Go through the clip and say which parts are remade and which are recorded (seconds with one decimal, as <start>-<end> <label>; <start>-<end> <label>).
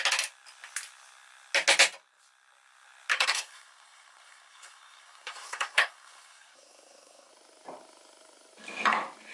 0.0-3.1 recorded; 3.1-7.3 remade; 7.3-9.3 recorded